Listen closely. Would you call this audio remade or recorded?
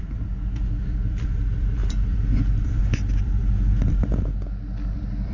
remade